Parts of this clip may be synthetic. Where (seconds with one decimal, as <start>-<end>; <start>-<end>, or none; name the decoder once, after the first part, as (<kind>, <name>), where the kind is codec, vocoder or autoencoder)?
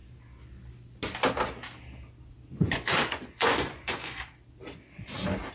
2.5-4.2 (vocoder, Vocos)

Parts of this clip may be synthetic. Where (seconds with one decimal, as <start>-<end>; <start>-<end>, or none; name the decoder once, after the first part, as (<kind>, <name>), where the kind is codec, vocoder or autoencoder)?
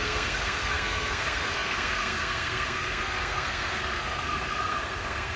0.0-5.4 (codec, SNAC)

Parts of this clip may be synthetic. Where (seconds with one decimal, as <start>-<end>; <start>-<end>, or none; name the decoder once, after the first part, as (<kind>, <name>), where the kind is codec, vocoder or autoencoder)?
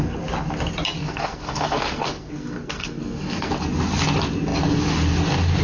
1.0-3.5 (codec, SNAC)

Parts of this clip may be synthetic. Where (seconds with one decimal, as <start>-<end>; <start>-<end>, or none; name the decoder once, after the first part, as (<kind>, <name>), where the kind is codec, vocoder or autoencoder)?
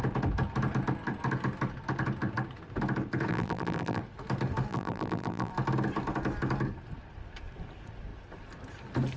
3.3-4.0 (vocoder, BigVGAN v2); 4.7-5.5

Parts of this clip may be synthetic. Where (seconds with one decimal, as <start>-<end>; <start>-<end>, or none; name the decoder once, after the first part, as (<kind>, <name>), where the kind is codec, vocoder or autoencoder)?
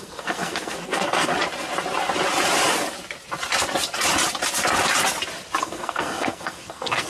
0.0-1.3 (codec, SNAC); 5.6-7.1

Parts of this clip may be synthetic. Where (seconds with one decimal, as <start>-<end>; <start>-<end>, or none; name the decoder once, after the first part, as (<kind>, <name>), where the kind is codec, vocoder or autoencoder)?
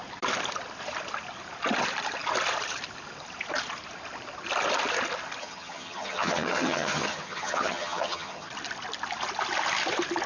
5.4-8.5 (vocoder, HiFi-GAN)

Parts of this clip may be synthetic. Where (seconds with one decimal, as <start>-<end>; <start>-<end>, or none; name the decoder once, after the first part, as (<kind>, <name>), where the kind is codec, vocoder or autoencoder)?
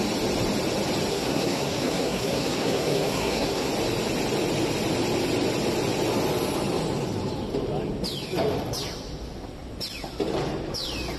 1.1-3.7 (codec, SNAC)